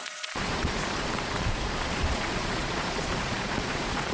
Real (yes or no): no